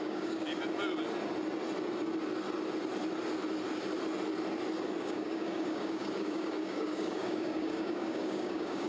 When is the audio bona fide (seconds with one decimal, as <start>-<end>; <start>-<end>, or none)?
0.4-5.0